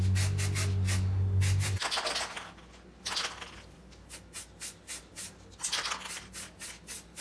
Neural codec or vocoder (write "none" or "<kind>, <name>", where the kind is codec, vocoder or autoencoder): none